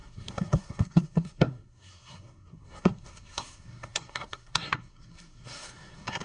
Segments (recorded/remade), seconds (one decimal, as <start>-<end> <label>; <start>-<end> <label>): 0.0-6.2 remade